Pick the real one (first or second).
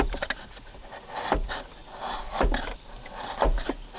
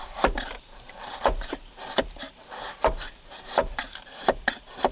first